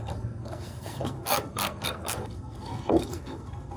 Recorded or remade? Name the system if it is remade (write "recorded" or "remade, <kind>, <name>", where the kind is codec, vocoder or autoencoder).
remade, codec, SNAC